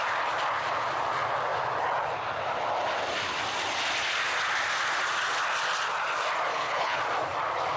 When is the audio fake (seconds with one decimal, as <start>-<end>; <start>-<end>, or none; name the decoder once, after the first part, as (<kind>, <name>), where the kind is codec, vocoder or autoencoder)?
6.5-7.0 (codec, HILCodec)

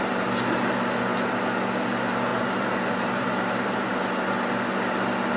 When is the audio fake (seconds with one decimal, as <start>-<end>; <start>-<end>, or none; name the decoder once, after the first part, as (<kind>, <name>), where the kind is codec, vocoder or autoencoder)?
2.3-4.0 (vocoder, BigVGAN v2)

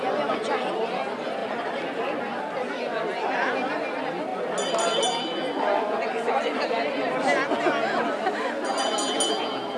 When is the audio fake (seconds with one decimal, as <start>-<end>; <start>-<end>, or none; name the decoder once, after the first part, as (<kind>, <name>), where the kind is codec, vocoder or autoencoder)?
none

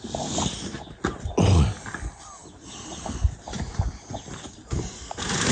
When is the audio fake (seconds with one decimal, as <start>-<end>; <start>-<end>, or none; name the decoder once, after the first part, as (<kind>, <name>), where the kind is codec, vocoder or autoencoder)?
none

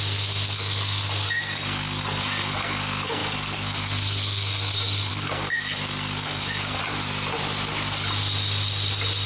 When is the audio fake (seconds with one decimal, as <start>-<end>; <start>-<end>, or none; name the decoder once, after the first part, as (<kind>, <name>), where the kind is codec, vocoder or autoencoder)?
0.0-6.8 (codec, SNAC)